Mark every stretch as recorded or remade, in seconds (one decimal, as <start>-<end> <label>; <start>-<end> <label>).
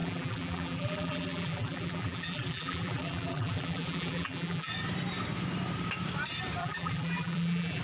0.0-4.7 remade; 4.7-6.6 recorded; 6.6-7.8 remade